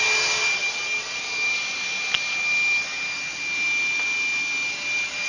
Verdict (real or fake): real